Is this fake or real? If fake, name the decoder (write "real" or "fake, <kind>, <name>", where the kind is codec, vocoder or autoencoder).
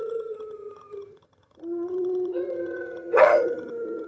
fake, vocoder, HiFi-GAN